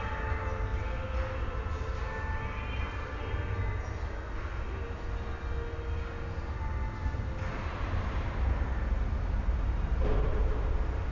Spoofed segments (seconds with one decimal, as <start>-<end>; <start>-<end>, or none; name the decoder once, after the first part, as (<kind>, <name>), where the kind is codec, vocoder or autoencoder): none